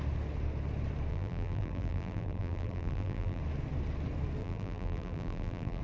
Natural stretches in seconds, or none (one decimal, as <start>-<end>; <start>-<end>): 0.0-1.1; 3.4-4.4